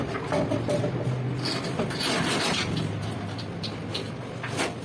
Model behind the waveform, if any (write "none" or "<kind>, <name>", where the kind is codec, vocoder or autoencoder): none